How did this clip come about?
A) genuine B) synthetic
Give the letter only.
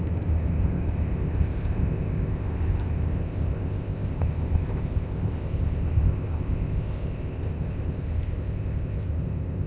B